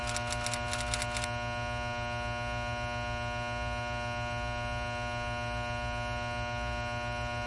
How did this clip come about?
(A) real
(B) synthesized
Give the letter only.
A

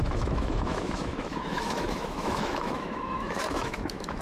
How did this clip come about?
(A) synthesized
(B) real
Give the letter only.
A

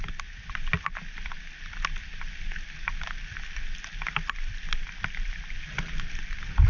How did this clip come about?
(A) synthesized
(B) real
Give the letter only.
B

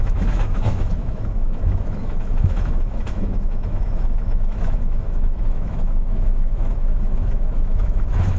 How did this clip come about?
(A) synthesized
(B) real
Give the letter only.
A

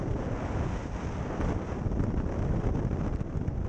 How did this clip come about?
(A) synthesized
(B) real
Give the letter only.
B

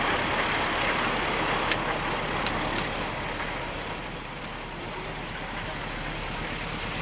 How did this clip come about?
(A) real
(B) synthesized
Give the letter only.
A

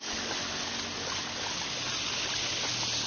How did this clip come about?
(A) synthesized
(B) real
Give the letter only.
B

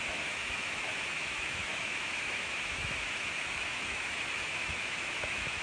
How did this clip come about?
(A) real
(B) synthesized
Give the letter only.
B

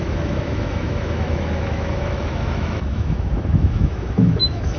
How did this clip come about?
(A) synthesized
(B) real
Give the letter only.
A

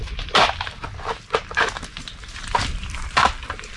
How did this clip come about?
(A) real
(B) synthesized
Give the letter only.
A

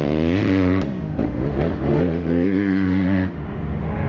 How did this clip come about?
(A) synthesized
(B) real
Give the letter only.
A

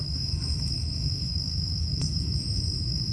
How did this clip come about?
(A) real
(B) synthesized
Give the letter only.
B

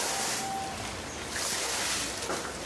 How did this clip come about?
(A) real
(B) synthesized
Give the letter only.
A